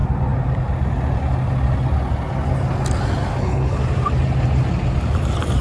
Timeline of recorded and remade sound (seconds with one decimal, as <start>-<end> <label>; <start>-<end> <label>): 0.0-3.4 recorded; 3.4-3.8 remade; 3.8-5.6 recorded